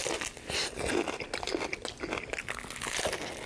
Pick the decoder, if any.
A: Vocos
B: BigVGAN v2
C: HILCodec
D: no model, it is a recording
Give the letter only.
D